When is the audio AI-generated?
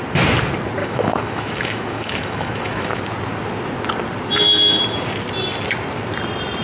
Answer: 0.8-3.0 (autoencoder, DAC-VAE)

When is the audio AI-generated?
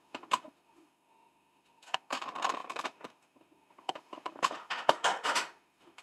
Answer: 0.0-6.0 (autoencoder, DAC-VAE)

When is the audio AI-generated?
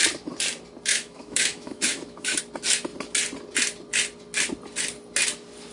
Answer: 0.9-2.4 (autoencoder, DAC-VAE)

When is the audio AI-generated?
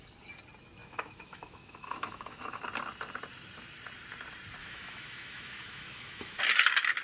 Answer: 0.8-2.6 (autoencoder, DAC-VAE); 4.6-6.4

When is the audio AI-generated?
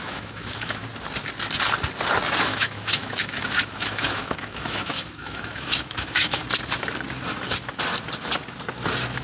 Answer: 0.0-0.8 (autoencoder, DAC-VAE); 2.4-6.4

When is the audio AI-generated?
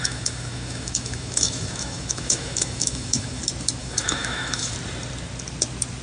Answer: 0.0-3.4 (autoencoder, DAC-VAE); 3.8-4.7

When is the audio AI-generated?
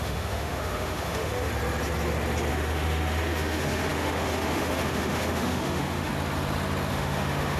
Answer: 0.0-1.5 (autoencoder, DAC-VAE); 2.5-6.1; 6.9-7.6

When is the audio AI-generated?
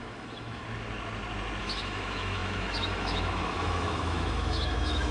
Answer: 0.0-0.6 (autoencoder, DAC-VAE); 1.6-5.1